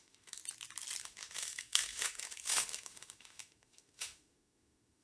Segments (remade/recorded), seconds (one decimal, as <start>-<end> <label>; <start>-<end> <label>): 0.0-0.4 remade; 0.4-1.0 recorded; 1.0-5.0 remade